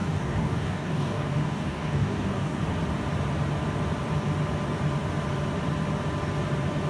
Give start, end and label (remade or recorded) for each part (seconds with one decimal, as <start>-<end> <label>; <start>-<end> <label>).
0.0-2.6 remade; 2.6-6.9 recorded